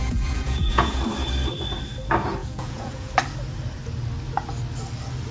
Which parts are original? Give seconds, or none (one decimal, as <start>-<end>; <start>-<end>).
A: 1.0-2.4; 3.1-5.3